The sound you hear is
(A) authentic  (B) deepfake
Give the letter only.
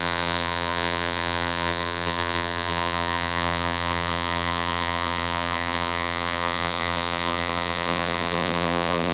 B